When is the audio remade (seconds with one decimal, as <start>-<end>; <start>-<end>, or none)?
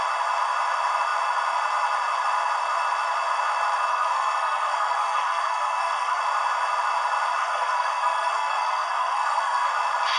3.9-6.2; 7.4-9.7